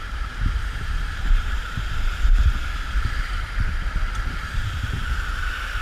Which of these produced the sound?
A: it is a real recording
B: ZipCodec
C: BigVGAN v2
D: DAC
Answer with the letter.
C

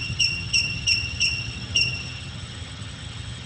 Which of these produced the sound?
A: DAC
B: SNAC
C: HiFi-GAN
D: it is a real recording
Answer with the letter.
C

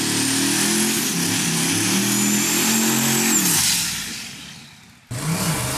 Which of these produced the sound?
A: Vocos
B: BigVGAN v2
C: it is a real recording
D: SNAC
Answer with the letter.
C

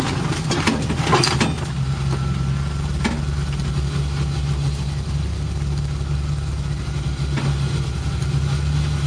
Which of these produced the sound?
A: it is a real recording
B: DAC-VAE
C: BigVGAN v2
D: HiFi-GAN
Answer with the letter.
A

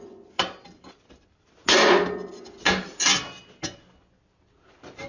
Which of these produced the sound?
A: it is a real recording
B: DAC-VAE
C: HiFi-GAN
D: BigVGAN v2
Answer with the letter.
A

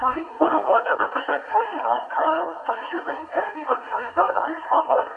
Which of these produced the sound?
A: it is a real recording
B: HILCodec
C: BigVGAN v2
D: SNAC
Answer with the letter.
D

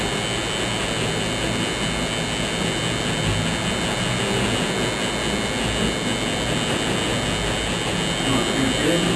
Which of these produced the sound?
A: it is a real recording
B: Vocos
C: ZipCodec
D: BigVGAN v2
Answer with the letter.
A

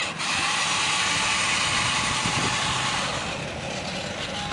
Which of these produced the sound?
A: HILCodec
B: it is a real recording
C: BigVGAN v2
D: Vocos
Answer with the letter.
B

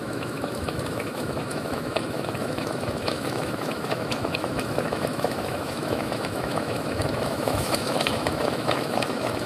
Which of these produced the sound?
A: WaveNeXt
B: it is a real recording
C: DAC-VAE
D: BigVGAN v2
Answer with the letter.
C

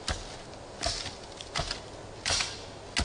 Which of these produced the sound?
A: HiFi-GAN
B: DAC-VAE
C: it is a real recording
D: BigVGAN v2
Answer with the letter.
C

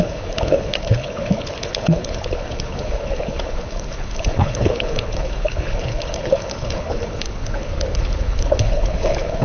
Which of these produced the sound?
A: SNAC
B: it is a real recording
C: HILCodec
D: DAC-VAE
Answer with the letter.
C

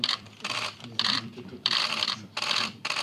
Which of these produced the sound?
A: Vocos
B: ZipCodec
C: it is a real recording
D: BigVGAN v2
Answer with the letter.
D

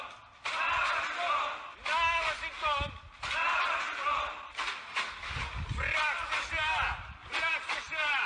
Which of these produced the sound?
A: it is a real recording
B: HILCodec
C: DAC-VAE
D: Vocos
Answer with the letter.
A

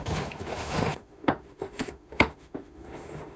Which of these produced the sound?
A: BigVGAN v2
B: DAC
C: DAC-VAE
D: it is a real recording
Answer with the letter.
C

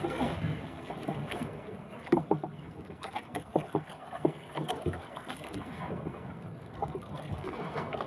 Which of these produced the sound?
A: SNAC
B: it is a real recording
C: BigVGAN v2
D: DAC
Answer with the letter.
A